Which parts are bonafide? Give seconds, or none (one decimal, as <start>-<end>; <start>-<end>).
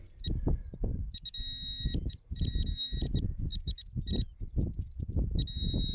0.0-5.9